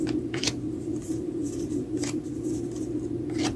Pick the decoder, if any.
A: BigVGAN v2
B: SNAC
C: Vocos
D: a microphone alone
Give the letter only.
D